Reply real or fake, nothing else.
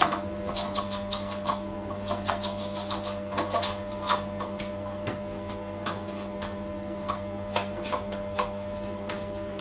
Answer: fake